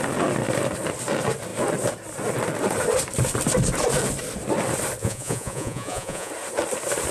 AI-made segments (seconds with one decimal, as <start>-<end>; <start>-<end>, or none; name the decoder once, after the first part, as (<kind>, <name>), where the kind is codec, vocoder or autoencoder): 5.0-6.3 (vocoder, Vocos)